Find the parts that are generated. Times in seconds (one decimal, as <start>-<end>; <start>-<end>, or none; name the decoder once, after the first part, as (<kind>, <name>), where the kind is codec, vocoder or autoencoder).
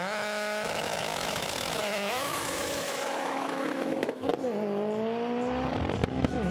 0.0-4.3 (autoencoder, DAC-VAE); 6.1-6.5